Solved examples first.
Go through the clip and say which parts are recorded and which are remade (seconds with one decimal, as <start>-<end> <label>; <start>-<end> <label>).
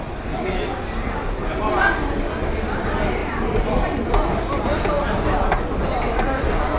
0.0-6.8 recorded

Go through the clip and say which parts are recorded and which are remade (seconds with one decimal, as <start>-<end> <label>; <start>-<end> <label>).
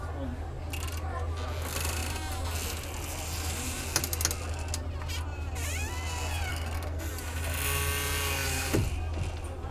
0.0-6.5 recorded; 6.5-7.1 remade; 7.1-9.7 recorded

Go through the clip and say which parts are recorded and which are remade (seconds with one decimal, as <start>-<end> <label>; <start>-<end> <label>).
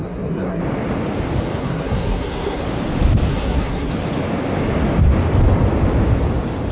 0.0-0.6 remade; 0.6-1.6 recorded; 1.6-2.6 remade; 2.6-3.3 recorded; 3.3-3.9 remade; 3.9-6.7 recorded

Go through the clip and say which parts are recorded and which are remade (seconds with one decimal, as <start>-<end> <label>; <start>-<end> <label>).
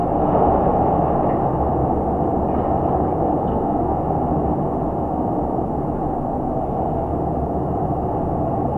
0.0-3.5 recorded; 3.5-4.0 remade; 4.0-8.8 recorded